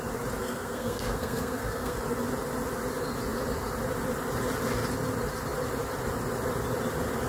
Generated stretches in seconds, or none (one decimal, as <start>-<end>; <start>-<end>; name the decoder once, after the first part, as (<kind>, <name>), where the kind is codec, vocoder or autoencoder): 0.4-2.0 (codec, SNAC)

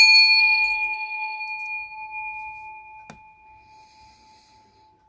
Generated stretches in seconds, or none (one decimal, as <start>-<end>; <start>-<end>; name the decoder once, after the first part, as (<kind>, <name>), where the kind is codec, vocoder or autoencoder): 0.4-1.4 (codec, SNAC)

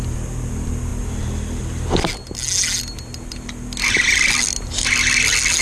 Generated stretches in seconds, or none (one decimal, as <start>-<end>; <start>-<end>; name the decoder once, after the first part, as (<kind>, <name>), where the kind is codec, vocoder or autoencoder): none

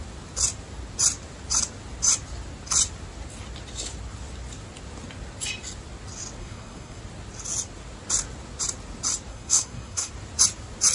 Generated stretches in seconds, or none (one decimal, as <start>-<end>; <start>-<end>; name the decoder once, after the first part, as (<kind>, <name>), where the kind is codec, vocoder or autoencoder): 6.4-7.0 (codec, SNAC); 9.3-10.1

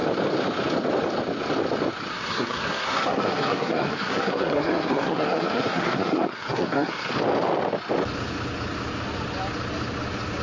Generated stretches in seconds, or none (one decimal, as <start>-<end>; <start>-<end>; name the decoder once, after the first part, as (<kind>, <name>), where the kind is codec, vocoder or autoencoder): 2.1-7.1 (codec, SNAC)

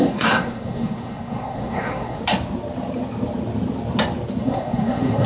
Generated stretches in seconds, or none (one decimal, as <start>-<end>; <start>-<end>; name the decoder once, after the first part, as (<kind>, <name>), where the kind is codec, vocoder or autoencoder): 0.0-2.2 (codec, SNAC); 4.4-5.3

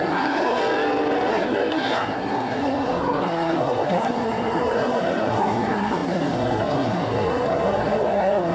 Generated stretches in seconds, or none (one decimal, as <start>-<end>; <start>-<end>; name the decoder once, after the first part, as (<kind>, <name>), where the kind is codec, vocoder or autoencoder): 0.0-0.6 (codec, SNAC); 1.3-8.5

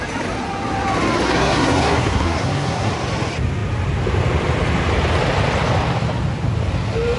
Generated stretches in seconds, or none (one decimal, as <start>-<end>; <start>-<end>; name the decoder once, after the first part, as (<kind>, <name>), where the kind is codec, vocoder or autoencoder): 1.3-2.9 (codec, SNAC)